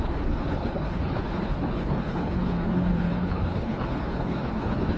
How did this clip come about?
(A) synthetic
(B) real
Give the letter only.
A